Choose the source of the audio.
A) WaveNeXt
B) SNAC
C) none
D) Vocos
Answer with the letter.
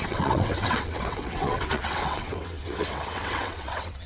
A